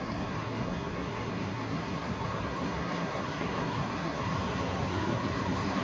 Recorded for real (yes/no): no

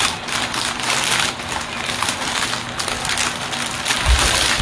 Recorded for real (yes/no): yes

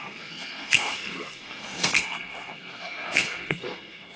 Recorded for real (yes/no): no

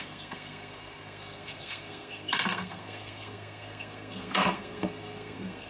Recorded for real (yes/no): no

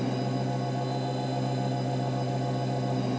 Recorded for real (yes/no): yes